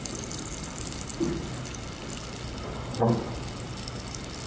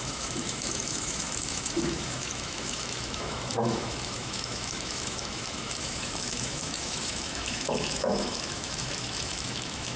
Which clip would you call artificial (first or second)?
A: second